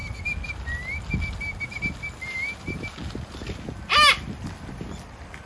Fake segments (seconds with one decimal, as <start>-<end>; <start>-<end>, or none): none